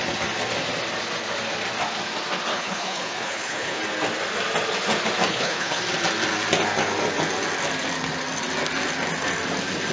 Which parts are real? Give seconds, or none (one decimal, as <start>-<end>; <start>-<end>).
0.0-2.5; 3.8-5.3; 5.8-9.9